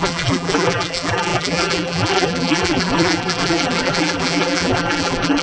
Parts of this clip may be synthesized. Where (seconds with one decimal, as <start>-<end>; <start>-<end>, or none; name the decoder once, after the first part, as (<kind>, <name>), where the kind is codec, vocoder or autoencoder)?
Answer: 0.0-5.4 (vocoder, BigVGAN v2)